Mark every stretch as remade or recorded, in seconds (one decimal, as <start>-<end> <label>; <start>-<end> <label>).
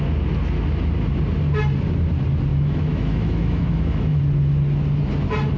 0.0-2.5 recorded; 2.5-4.2 remade; 4.2-5.6 recorded